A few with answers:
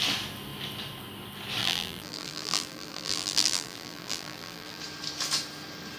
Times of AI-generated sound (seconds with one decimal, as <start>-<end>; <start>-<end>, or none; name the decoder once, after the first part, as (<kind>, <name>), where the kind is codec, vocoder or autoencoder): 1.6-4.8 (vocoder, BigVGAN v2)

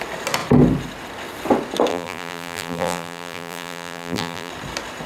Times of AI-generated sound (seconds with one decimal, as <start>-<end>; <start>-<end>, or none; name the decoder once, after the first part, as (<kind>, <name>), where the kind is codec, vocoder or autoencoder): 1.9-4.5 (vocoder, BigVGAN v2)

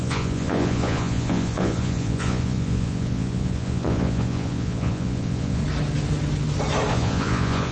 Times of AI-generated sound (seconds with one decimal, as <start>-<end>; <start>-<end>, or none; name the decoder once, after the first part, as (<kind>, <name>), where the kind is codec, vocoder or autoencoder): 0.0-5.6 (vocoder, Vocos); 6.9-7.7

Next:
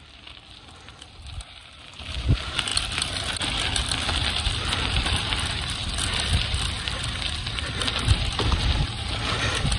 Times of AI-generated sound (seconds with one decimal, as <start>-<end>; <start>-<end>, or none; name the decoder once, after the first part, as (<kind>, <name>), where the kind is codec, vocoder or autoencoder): 0.0-9.8 (vocoder, BigVGAN v2)

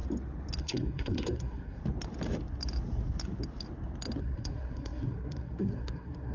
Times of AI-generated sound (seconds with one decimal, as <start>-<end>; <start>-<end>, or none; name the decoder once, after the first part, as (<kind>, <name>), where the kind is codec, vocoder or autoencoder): 0.6-1.8 (codec, SNAC); 4.2-6.3

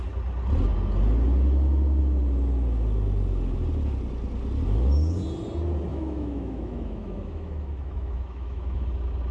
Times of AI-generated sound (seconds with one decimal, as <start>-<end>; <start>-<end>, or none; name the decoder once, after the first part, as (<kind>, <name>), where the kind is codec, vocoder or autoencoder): 5.9-8.9 (autoencoder, DAC-VAE)